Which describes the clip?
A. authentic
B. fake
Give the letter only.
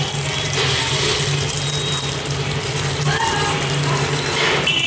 B